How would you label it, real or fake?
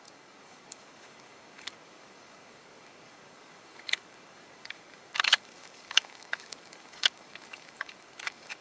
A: fake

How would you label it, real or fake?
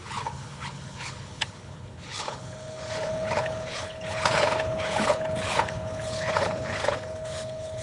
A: fake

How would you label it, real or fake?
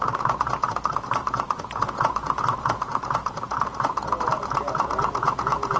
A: fake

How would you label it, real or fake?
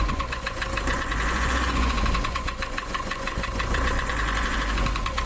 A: fake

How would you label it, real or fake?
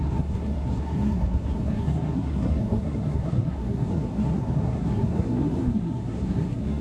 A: fake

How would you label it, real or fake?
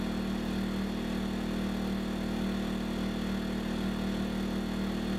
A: real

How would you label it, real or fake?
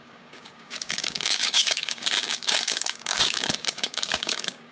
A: fake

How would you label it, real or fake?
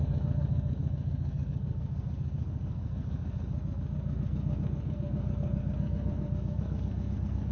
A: fake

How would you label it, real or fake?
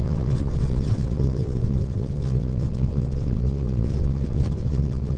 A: fake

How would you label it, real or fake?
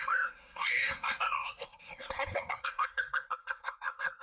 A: fake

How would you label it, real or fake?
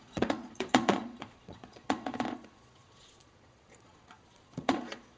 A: fake